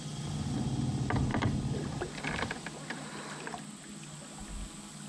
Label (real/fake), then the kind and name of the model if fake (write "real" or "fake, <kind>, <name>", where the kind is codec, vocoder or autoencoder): real